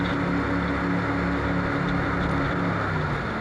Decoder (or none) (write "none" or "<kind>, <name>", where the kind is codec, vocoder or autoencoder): none